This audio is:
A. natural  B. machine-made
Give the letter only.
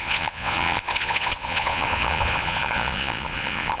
B